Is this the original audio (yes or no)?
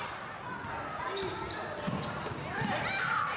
yes